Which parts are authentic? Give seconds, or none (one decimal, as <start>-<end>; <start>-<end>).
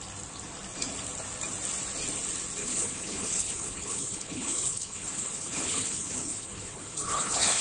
0.0-2.6